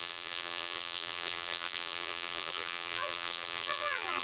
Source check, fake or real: fake